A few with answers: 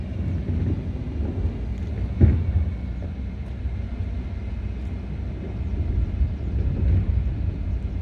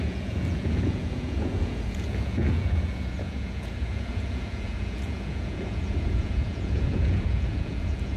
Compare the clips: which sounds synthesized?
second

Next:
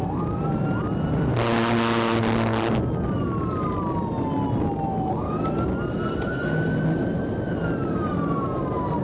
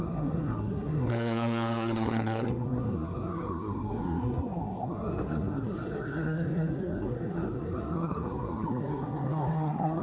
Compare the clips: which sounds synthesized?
second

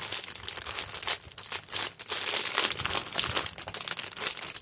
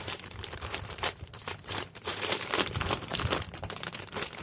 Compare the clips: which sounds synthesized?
second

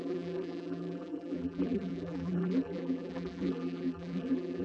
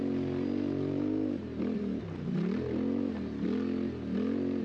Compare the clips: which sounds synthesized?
first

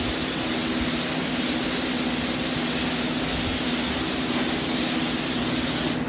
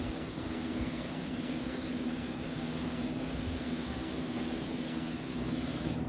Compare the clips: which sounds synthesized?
second